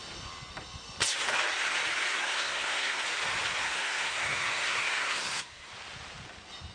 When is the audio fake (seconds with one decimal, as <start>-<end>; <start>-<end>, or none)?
2.1-3.0; 3.6-5.7